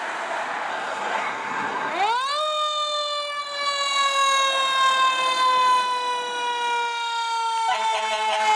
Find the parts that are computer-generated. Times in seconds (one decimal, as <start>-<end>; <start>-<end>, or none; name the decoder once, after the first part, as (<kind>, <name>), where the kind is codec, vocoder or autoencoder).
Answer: 0.7-1.9 (codec, SNAC)